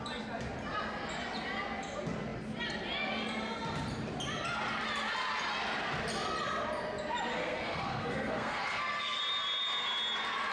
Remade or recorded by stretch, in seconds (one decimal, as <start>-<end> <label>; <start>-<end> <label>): 0.0-7.3 recorded; 7.3-9.2 remade; 9.2-10.5 recorded